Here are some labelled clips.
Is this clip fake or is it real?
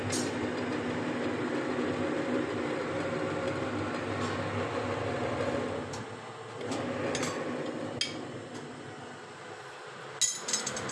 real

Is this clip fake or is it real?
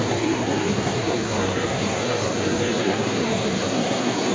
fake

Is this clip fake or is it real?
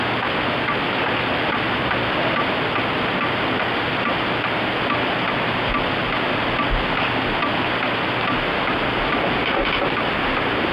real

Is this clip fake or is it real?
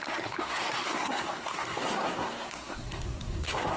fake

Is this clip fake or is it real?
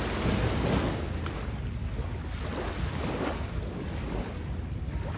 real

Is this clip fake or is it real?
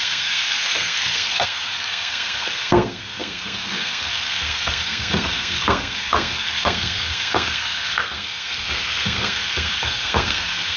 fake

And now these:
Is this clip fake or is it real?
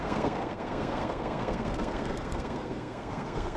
fake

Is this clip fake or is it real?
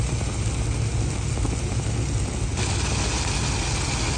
real